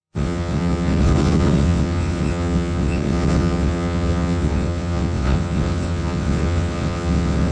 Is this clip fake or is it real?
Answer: fake